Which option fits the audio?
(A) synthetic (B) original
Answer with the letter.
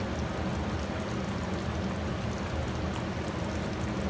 B